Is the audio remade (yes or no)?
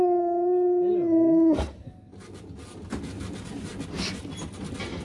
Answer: no